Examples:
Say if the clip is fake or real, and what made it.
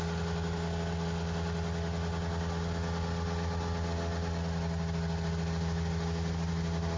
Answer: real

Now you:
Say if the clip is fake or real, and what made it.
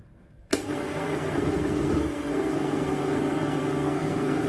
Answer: fake, codec, SNAC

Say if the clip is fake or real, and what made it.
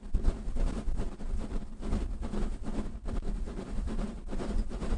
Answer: real